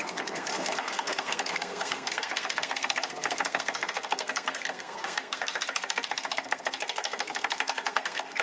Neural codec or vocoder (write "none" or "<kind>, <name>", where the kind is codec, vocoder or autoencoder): codec, SNAC